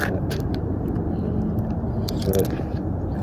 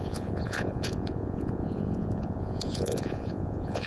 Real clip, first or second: first